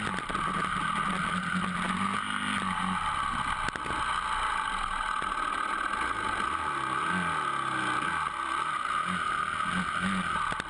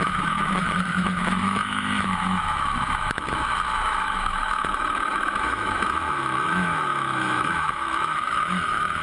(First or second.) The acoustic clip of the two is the first